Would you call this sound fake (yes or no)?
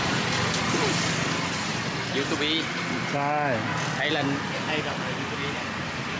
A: no